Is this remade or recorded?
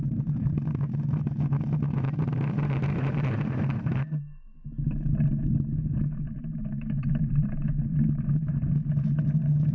remade